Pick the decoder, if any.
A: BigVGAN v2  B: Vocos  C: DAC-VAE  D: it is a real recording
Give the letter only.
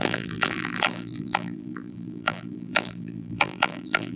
A